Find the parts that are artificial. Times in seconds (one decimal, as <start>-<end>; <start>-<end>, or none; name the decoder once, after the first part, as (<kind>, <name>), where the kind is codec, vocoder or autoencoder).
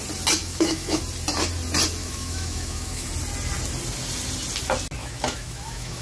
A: 0.4-1.0 (autoencoder, DAC-VAE); 2.0-3.1; 5.0-6.0